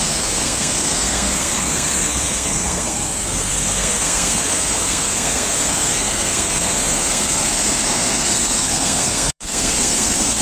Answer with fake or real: fake